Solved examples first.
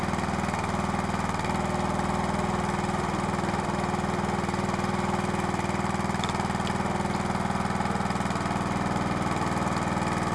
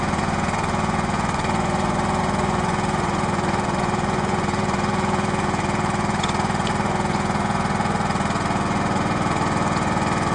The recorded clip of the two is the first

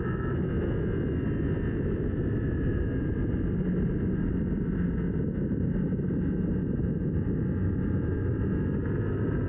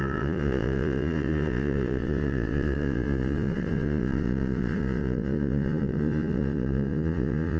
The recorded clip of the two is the first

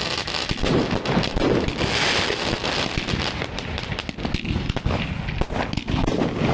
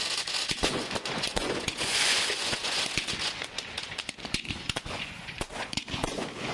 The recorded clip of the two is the first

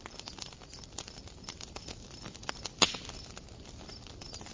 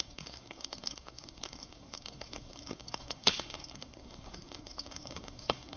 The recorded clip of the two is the first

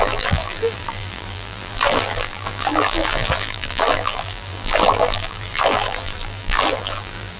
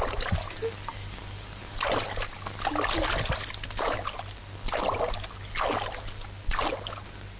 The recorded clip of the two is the second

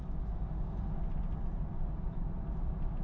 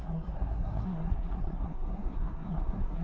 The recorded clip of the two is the first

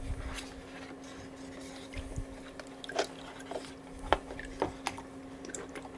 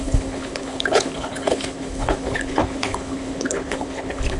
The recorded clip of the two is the first